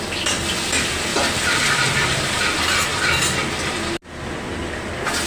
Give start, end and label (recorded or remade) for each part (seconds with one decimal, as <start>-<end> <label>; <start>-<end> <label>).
0.0-1.1 recorded; 1.1-2.4 remade; 2.4-5.3 recorded